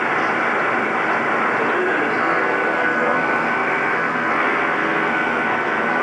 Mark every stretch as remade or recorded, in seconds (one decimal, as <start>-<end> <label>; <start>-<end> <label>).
0.0-2.2 recorded; 2.2-6.0 remade